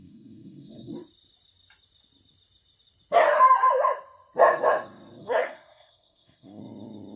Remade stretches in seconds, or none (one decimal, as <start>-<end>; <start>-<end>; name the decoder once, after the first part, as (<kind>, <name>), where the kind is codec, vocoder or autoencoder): 0.0-0.9 (codec, SNAC); 5.2-6.6